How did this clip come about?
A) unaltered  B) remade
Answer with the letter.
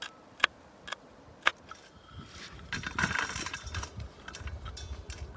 A